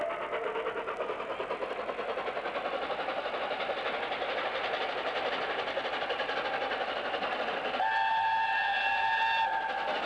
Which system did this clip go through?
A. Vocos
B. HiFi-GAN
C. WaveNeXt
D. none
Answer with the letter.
D